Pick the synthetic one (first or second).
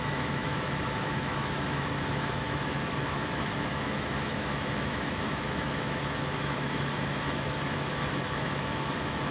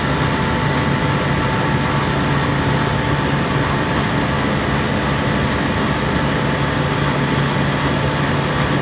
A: first